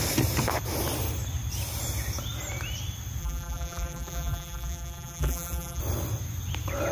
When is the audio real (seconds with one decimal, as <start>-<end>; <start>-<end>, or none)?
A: 0.0-3.2; 5.8-6.9